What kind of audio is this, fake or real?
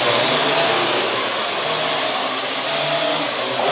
real